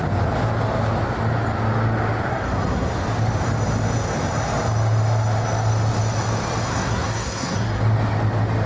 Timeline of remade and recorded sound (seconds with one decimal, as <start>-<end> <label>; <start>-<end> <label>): 0.0-2.3 recorded; 2.3-2.9 remade; 2.9-6.7 recorded; 6.7-7.8 remade; 7.8-8.7 recorded